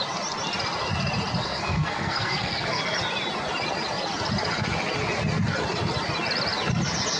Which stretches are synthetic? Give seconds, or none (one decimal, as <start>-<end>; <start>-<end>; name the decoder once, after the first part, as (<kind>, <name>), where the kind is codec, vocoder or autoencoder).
1.4-2.8 (codec, SNAC)

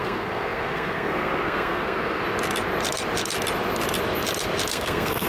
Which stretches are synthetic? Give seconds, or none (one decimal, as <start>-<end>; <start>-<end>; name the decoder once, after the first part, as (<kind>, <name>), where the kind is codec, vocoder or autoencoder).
0.0-2.2 (codec, SNAC); 4.7-5.3

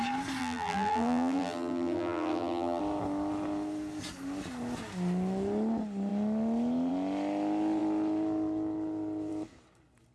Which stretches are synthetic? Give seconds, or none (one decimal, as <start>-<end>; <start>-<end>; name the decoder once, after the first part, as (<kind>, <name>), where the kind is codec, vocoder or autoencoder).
0.4-2.8 (vocoder, BigVGAN v2)

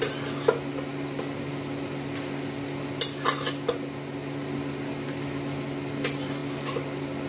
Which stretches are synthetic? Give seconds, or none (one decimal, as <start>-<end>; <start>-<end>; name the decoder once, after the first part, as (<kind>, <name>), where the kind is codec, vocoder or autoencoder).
none

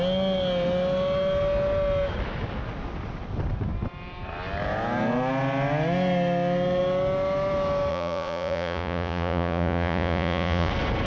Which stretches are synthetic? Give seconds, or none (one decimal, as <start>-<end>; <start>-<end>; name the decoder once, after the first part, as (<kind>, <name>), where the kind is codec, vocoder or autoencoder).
7.9-10.7 (vocoder, Vocos)

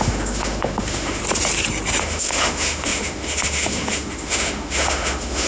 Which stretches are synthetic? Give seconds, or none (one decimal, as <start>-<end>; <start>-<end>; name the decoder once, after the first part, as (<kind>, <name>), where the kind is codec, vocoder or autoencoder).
0.0-1.2 (autoencoder, DAC-VAE); 2.0-5.5